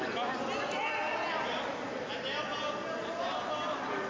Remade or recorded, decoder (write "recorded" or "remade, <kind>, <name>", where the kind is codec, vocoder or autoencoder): recorded